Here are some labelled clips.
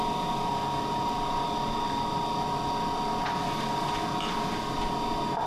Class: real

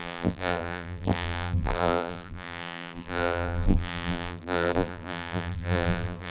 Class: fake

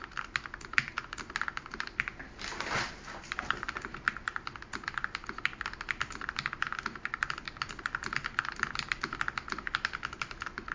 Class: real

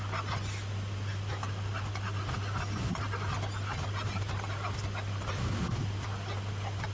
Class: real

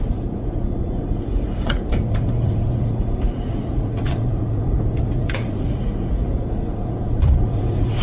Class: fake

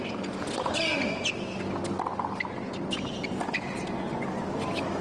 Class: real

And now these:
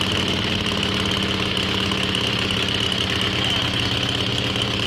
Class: real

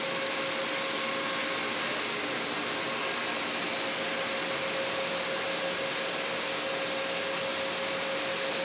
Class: real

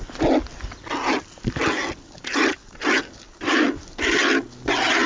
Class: real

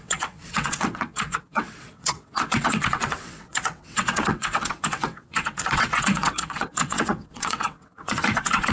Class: fake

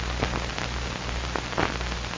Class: real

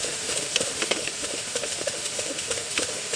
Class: fake